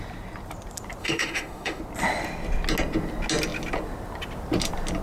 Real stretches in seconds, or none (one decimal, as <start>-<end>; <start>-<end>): 0.0-1.0; 1.8-5.0